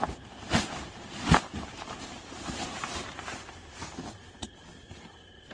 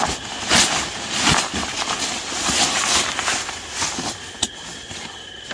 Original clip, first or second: second